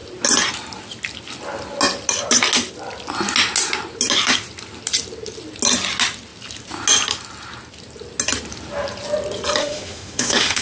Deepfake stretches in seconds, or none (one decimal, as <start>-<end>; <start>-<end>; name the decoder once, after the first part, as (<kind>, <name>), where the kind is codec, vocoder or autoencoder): 9.6-10.6 (autoencoder, DAC-VAE)